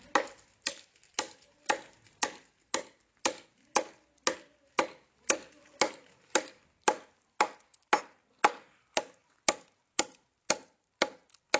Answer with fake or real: real